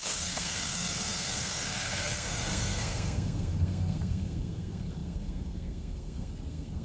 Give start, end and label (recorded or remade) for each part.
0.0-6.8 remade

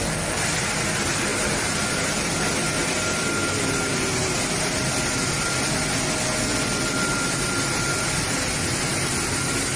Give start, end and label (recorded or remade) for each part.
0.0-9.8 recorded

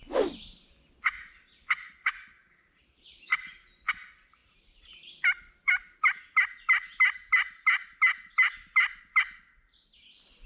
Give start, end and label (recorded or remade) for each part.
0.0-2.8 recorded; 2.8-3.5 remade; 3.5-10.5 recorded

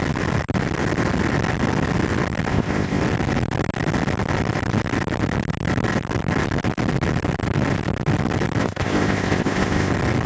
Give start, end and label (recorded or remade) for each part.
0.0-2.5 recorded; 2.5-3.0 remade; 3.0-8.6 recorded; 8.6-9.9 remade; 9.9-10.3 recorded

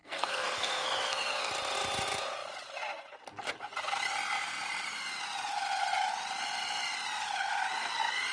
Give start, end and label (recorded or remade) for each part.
0.0-1.5 remade; 1.5-8.3 recorded